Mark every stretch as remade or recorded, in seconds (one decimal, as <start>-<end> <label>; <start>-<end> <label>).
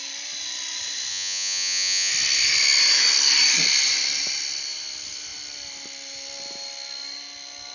0.0-1.1 recorded; 1.1-2.1 remade; 2.1-7.7 recorded